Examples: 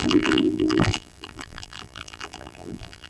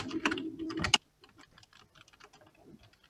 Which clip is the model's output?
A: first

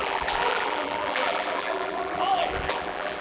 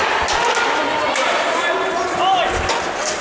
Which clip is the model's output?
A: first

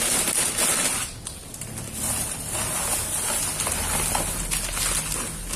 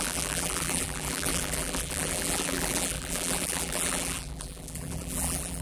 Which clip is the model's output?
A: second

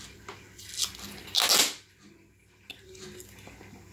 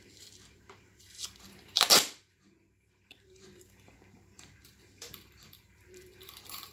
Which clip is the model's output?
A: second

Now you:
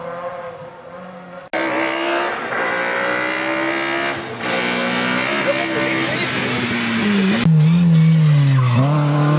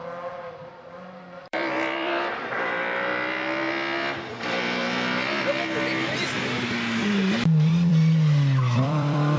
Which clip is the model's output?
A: second